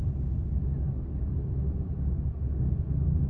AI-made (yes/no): no